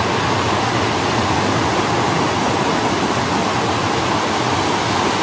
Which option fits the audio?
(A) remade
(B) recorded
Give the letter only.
B